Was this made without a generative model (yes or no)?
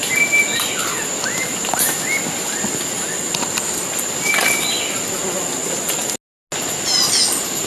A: yes